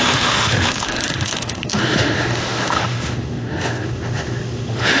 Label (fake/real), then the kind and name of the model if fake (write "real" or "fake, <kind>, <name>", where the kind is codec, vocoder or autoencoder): fake, autoencoder, DAC-VAE